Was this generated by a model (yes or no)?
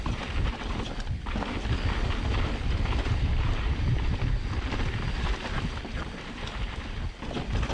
yes